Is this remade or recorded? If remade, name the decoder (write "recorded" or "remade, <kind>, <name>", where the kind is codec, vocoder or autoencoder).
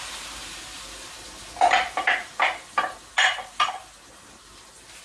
recorded